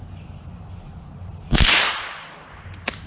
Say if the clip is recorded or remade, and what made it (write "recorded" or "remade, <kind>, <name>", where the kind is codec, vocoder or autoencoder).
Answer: recorded